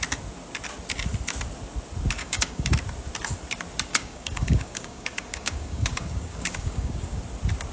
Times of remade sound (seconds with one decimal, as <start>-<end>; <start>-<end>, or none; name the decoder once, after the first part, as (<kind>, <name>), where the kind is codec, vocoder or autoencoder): 2.2-2.7 (codec, DAC); 3.9-7.2